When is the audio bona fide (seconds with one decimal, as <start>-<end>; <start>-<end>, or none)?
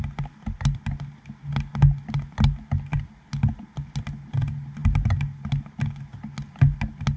0.0-7.2